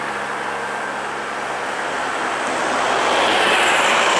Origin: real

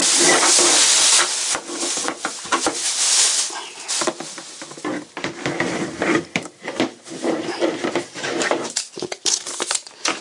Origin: real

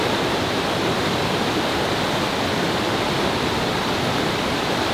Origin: real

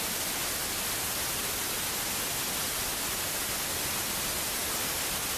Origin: real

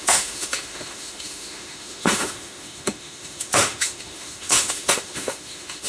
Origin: fake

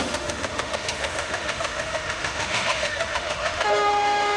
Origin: fake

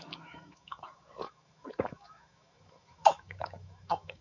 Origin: fake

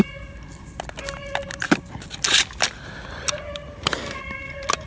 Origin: real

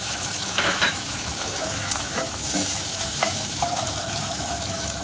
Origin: fake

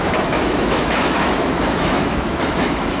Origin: fake